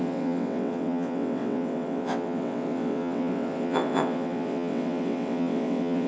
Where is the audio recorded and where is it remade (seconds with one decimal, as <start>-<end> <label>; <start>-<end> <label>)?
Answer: 0.0-6.1 remade